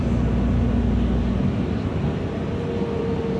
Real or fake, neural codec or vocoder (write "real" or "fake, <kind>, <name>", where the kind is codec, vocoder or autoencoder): real